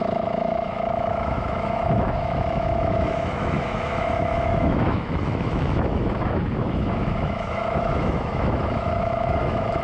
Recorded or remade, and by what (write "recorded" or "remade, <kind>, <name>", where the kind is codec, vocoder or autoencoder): remade, autoencoder, DAC-VAE